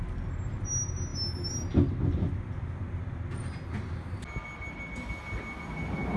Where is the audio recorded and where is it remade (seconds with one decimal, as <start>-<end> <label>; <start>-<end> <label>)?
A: 0.0-6.2 recorded